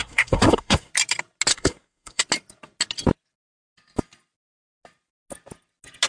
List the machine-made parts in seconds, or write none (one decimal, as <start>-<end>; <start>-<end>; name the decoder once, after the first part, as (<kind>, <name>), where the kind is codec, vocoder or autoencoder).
0.0-0.9 (codec, SNAC); 1.5-2.2